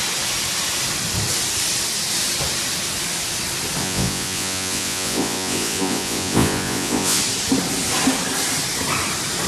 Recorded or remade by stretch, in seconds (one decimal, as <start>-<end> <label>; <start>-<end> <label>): 0.0-3.8 recorded; 3.8-7.2 remade; 7.2-9.5 recorded